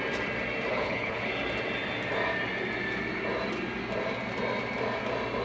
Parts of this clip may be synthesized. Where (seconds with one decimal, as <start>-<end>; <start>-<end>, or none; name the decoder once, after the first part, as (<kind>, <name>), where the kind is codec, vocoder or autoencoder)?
0.7-1.3 (codec, HILCodec)